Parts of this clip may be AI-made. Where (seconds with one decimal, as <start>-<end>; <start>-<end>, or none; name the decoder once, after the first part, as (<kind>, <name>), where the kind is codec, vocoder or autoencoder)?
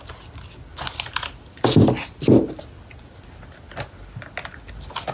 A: none